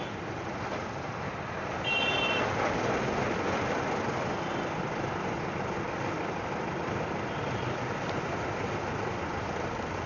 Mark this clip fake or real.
fake